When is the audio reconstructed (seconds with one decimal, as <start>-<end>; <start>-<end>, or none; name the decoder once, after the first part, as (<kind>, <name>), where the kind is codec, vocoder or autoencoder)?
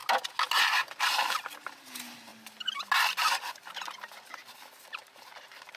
0.7-2.3 (vocoder, BigVGAN v2); 4.2-5.8